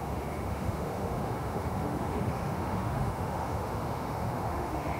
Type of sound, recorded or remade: remade